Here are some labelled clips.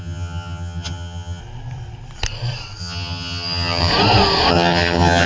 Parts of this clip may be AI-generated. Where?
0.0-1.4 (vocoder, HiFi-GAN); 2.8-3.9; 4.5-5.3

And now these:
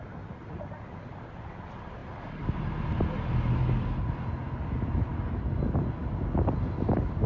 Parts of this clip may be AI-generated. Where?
none

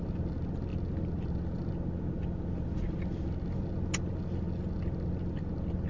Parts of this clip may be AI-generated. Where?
none